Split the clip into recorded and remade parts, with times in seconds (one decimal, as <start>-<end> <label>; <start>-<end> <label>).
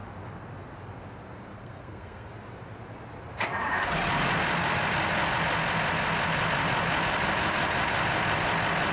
0.0-1.6 recorded; 1.6-2.3 remade; 2.3-8.9 recorded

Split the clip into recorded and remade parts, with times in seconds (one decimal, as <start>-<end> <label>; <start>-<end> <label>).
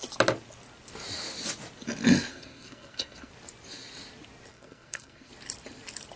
0.0-2.3 recorded; 2.3-3.3 remade; 3.3-4.5 recorded; 4.5-5.3 remade; 5.3-6.2 recorded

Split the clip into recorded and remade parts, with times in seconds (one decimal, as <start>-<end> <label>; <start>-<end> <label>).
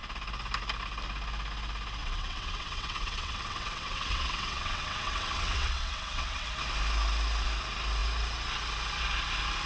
0.0-2.0 recorded; 2.0-6.5 remade; 6.5-9.7 recorded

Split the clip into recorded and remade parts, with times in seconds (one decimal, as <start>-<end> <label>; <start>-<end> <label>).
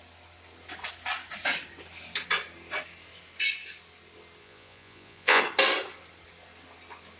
0.0-4.4 recorded; 4.4-5.4 remade; 5.4-7.2 recorded